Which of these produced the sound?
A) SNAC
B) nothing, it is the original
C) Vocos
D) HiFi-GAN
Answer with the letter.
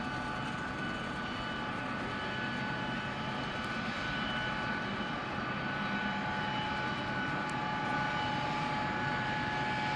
B